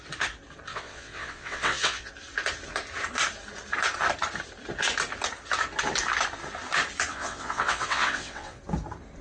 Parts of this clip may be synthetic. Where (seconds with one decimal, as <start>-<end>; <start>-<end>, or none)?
0.7-2.1; 7.1-8.6